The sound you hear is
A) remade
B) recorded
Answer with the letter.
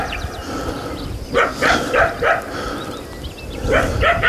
B